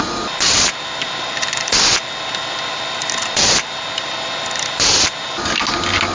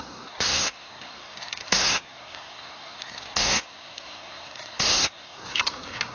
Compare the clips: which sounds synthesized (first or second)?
second